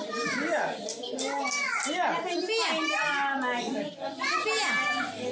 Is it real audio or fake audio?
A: real